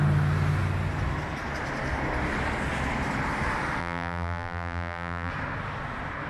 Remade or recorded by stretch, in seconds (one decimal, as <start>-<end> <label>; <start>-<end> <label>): 0.0-3.8 recorded; 3.8-5.3 remade; 5.3-6.3 recorded